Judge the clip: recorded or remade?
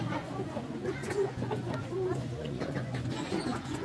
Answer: remade